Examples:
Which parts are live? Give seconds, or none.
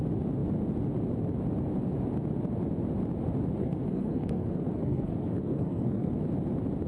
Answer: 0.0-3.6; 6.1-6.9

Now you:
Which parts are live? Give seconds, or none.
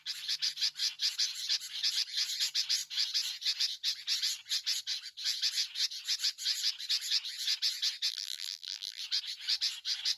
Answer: 0.0-8.1; 9.0-10.2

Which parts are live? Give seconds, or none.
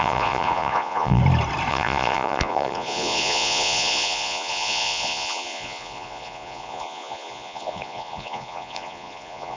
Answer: 1.2-1.7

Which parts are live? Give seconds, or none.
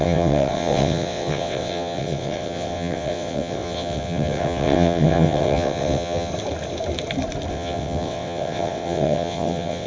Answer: 6.3-7.5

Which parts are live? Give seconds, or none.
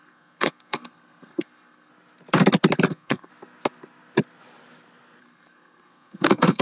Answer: 1.9-2.9; 3.3-5.2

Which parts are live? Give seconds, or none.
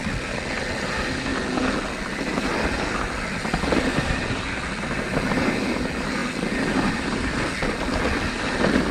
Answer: 0.0-8.9